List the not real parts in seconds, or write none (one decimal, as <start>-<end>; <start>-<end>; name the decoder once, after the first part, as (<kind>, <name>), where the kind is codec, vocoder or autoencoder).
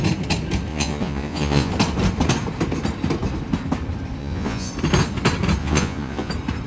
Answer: 0.7-1.7 (vocoder, Vocos); 4.2-4.7; 5.6-6.3